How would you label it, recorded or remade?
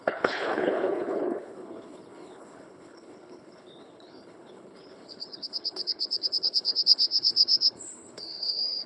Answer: remade